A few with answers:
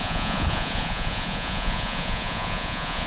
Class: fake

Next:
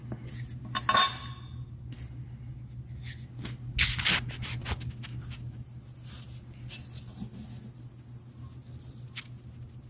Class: real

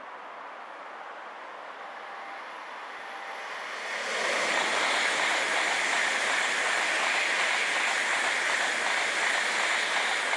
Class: real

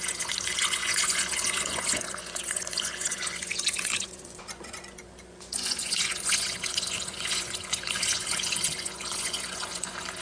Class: fake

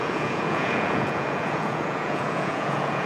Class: fake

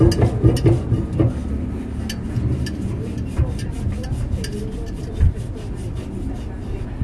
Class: real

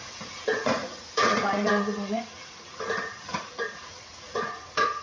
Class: fake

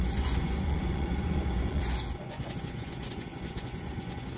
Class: fake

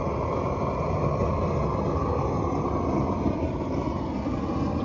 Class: real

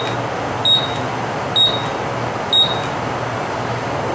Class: real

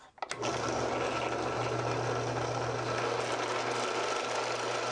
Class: real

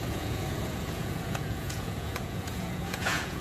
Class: fake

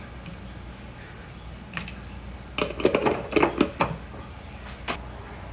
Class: real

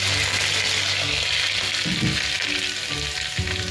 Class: real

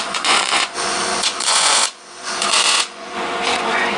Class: fake